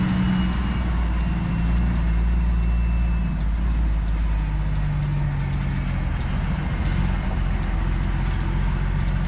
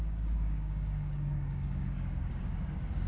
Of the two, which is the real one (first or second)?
first